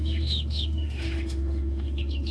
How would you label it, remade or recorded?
remade